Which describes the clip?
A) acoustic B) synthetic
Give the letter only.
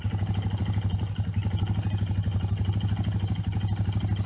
A